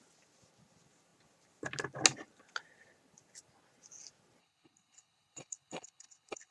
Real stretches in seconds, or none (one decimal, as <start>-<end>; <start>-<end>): 0.0-4.4

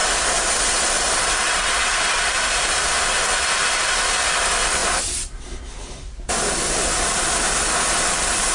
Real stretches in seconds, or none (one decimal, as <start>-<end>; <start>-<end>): 0.0-8.5

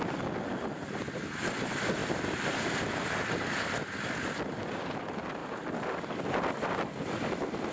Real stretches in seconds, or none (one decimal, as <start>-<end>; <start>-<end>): 0.0-7.7

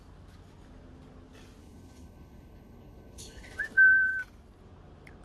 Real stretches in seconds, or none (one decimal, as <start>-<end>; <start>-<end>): 0.0-1.6; 3.6-5.2

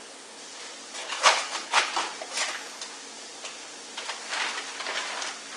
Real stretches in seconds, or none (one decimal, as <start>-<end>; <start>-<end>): 0.0-1.0; 1.9-5.6